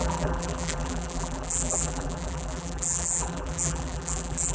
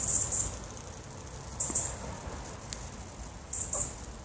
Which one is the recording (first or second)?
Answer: second